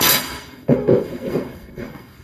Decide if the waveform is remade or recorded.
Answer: remade